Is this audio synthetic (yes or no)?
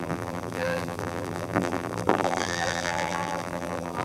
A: yes